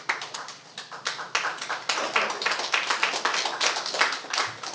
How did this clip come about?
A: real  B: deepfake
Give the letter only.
A